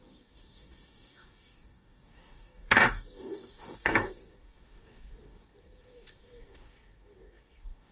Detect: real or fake fake